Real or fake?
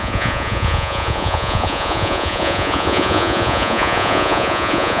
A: fake